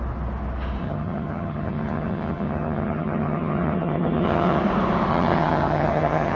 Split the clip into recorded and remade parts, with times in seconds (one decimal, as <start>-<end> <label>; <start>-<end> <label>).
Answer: 0.0-0.8 recorded; 0.8-4.6 remade; 4.6-5.1 recorded; 5.1-6.4 remade